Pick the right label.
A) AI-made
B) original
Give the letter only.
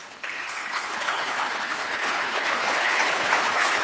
A